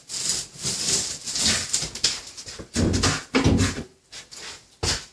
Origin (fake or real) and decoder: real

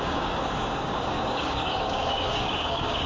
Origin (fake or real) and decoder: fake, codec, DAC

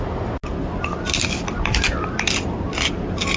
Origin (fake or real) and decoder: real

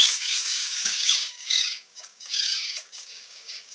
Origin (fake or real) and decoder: fake, codec, DAC